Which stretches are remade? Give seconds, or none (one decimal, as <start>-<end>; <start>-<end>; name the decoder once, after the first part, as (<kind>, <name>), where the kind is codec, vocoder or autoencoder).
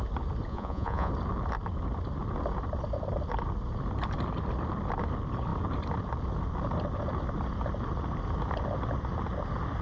0.5-1.1 (vocoder, Vocos)